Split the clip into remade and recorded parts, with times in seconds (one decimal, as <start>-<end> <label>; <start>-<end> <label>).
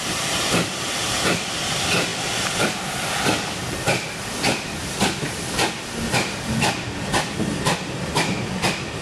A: 0.0-9.0 remade